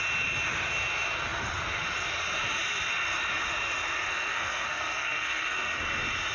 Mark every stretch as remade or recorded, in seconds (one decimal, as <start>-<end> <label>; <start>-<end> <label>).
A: 0.0-4.1 recorded; 4.1-5.8 remade; 5.8-6.3 recorded